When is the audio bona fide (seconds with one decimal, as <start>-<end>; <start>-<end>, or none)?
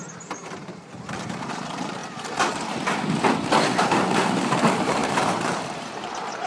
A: 2.0-4.4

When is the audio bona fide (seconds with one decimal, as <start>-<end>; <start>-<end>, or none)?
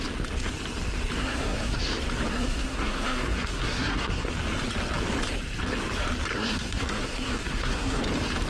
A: 0.0-1.2; 1.8-2.3; 4.3-6.3; 8.0-8.5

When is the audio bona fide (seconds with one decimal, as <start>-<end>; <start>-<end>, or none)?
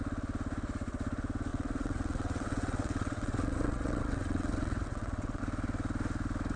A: 0.0-1.5; 5.4-6.6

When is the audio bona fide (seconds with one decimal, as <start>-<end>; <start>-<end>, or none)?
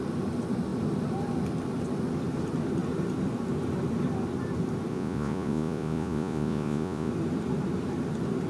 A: 0.0-4.9; 7.1-8.5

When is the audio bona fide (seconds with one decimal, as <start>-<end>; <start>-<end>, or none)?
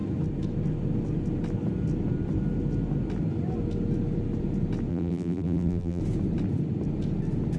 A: 0.0-4.9; 6.0-7.6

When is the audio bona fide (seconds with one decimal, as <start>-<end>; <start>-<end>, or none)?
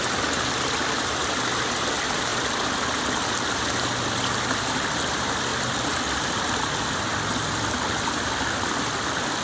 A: 0.0-9.4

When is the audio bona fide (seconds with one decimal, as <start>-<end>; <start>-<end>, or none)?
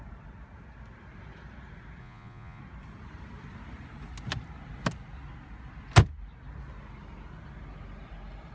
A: 0.0-2.0; 2.6-8.5